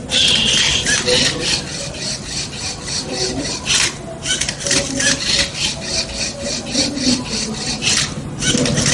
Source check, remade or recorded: recorded